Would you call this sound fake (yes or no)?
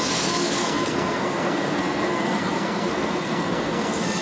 yes